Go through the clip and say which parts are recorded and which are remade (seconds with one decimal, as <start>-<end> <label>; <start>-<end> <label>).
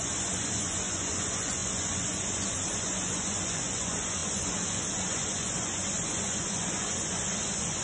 0.0-7.8 remade